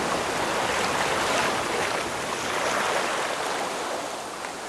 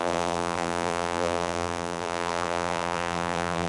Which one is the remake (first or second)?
second